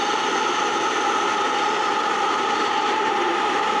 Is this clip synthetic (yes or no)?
yes